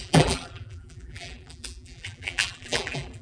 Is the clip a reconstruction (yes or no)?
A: yes